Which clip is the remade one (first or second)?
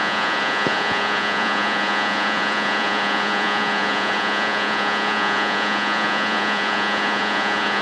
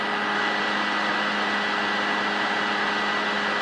first